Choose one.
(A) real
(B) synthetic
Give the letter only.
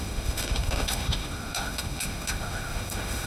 B